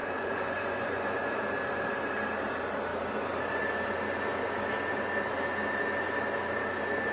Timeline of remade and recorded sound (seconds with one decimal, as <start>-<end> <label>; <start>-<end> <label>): 0.0-1.2 remade; 1.2-7.1 recorded

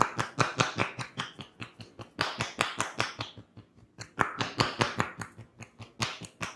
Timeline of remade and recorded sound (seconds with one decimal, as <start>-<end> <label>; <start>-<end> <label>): 0.0-0.8 recorded; 0.8-1.8 remade; 1.8-6.6 recorded

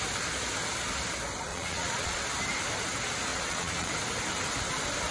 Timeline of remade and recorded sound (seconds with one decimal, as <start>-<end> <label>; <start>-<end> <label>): 0.0-1.5 recorded; 1.5-2.2 remade; 2.2-3.3 recorded; 3.3-3.9 remade; 3.9-5.1 recorded

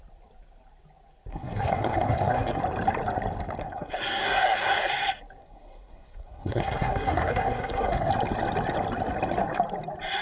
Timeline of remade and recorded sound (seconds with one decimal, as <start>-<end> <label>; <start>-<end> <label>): 0.0-1.3 recorded; 1.3-2.6 remade; 2.6-3.6 recorded; 3.6-4.9 remade; 4.9-5.4 recorded; 5.4-8.1 remade; 8.1-10.2 recorded